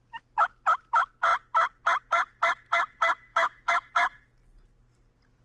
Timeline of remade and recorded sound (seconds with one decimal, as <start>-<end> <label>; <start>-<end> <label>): 0.0-3.3 recorded; 3.3-3.9 remade; 3.9-5.4 recorded